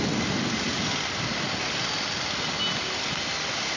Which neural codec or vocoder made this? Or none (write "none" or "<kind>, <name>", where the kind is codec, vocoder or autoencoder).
none